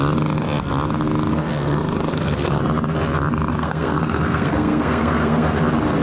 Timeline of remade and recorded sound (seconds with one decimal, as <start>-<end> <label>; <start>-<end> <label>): 0.0-1.3 recorded; 1.3-2.6 remade; 2.6-3.5 recorded; 3.5-5.6 remade; 5.6-6.0 recorded

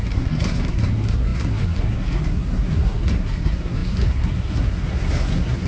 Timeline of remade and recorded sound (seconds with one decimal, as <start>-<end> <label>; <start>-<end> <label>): 0.0-5.7 remade